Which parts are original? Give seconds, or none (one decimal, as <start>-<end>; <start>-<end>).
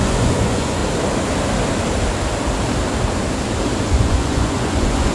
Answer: 0.8-3.9